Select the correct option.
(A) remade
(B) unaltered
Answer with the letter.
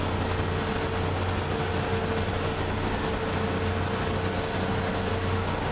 B